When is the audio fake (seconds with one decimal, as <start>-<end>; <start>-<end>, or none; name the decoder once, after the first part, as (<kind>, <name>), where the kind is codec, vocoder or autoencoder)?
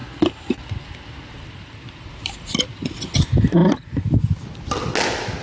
none